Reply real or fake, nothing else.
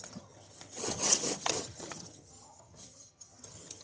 fake